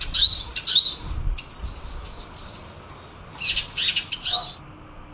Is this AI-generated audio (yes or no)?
no